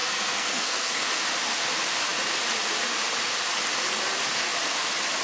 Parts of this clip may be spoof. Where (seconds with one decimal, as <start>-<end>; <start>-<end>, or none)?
0.0-1.2

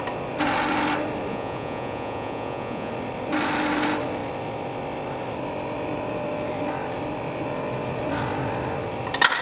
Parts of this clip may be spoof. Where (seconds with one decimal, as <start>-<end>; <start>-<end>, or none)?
1.3-2.9